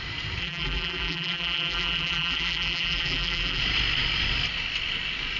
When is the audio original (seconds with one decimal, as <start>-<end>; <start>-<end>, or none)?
0.0-0.4; 3.6-5.4